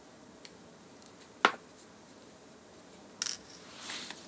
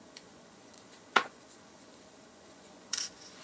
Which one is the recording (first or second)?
first